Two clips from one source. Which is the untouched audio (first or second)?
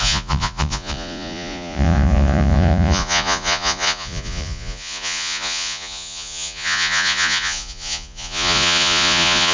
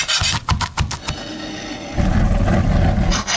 second